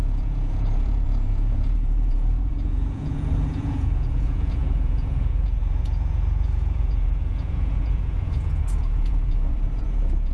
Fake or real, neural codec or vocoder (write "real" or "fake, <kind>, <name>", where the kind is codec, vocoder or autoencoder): fake, vocoder, Vocos